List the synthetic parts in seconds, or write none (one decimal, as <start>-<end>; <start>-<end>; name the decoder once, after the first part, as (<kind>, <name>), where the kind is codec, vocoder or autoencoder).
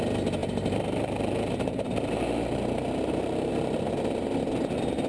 0.4-3.5 (vocoder, BigVGAN v2)